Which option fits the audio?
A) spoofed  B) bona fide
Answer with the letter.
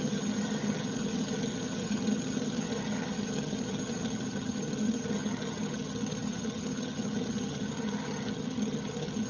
A